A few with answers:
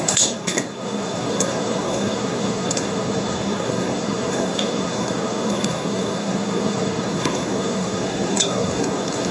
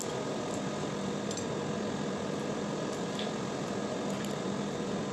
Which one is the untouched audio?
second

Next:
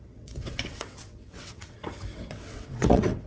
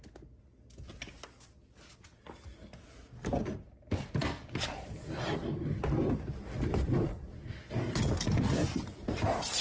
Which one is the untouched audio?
second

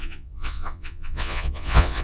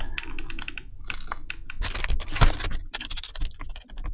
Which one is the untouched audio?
second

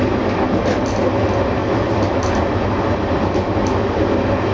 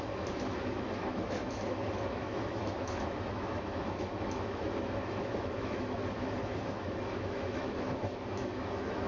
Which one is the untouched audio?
first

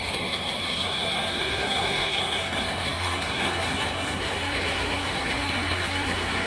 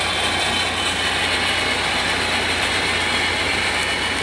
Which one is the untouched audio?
second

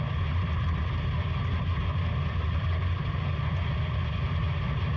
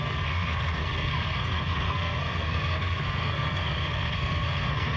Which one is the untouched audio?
first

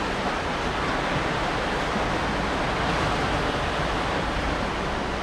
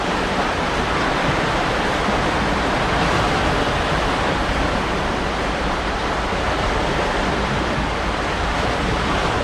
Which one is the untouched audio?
first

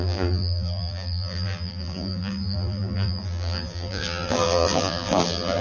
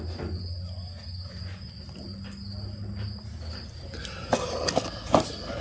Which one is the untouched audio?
second